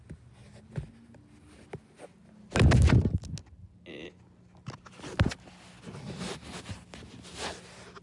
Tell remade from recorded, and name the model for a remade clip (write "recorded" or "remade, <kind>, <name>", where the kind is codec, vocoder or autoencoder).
recorded